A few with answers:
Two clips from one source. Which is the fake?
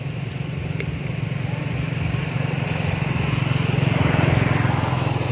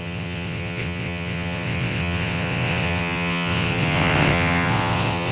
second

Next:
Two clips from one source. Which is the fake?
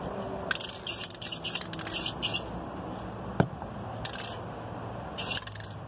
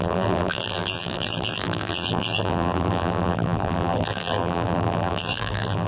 second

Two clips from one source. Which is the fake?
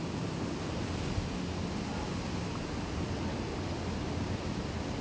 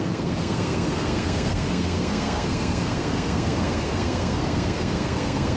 second